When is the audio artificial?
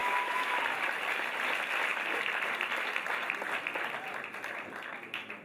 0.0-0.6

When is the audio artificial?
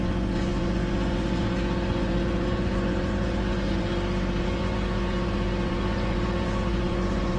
0.0-3.9; 4.4-7.4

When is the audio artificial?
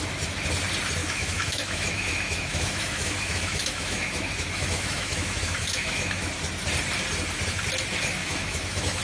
1.0-6.3; 8.2-9.0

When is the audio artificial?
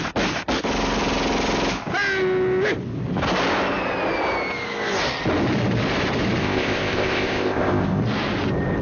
6.4-8.0